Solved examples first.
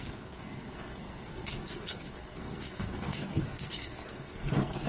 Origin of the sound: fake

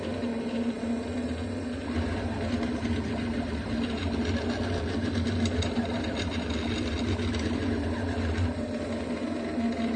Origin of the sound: real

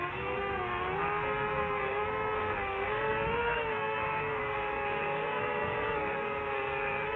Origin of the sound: fake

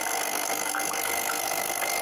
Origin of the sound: fake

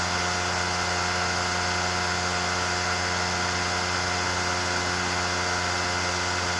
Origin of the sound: real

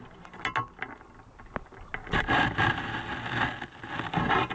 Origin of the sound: real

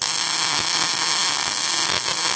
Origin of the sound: real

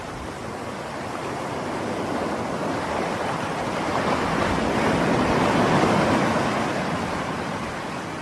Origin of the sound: real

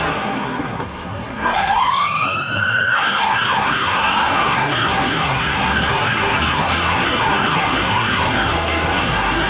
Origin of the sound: fake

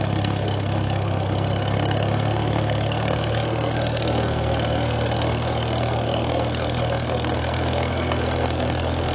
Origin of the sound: fake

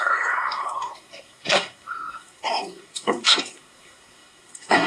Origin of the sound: fake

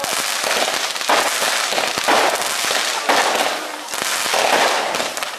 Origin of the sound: real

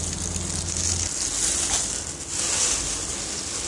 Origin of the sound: real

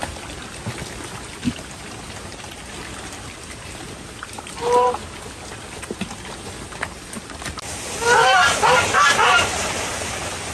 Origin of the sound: real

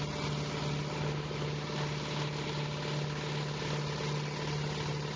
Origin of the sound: real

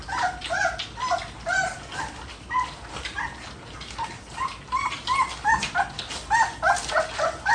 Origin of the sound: real